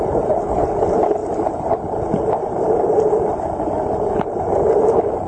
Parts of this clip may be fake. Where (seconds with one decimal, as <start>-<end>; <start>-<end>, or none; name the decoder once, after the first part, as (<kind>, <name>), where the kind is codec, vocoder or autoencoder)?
1.2-4.4 (vocoder, BigVGAN v2)

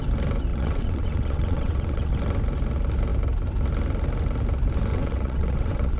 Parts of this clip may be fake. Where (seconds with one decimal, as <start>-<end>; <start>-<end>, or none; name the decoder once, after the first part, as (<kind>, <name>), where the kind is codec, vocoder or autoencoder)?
0.5-2.1 (vocoder, WaveNeXt); 4.9-6.0

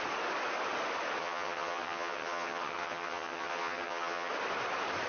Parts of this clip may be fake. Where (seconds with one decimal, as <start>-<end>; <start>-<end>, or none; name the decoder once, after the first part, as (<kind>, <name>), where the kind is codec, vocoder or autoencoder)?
1.2-4.3 (vocoder, HiFi-GAN)